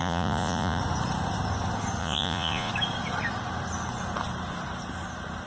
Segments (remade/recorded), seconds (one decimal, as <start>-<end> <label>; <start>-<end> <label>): 0.0-0.8 remade; 0.8-2.0 recorded; 2.0-2.7 remade; 2.7-5.5 recorded